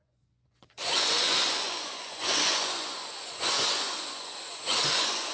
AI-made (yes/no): yes